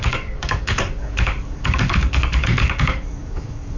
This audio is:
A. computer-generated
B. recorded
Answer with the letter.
A